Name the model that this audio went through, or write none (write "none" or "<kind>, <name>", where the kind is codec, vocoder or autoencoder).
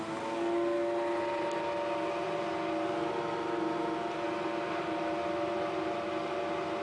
none